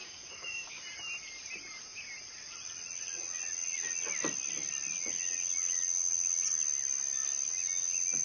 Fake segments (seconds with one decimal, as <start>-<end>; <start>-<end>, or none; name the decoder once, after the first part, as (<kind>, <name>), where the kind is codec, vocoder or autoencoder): 0.0-0.8 (codec, DAC)